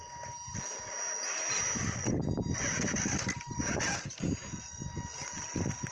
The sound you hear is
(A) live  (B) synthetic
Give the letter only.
A